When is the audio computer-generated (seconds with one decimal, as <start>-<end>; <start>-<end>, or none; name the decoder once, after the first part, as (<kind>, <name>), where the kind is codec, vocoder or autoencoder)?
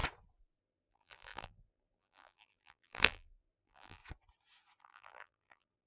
0.6-4.0 (vocoder, BigVGAN v2); 4.8-5.9